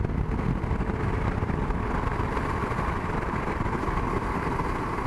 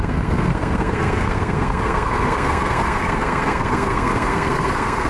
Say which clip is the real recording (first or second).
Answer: first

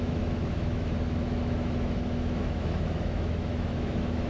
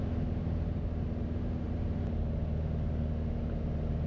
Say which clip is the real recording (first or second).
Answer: second